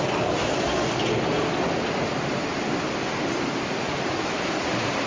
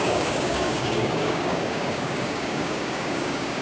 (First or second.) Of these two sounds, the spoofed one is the second